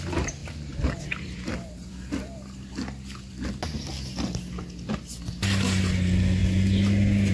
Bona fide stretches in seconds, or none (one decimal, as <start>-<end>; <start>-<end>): 0.0-0.4; 2.7-7.3